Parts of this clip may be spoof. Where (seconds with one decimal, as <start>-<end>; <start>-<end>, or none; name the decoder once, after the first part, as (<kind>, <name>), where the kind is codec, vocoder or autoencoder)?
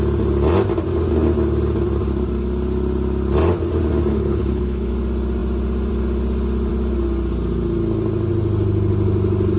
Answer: 4.1-4.9 (codec, HILCodec)